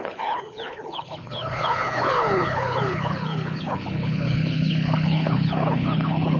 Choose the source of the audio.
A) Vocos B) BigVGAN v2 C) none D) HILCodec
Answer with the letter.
D